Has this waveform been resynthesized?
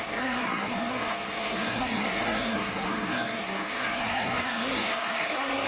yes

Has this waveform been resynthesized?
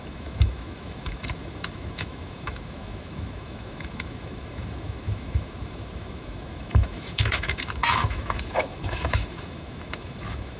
yes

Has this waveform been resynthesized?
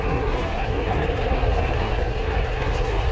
yes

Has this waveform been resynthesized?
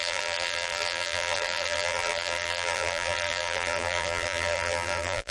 yes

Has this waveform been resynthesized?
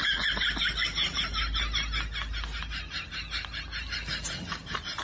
no